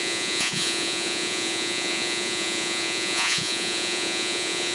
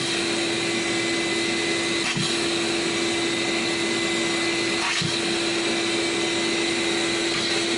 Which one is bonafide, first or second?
second